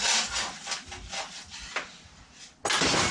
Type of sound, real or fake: real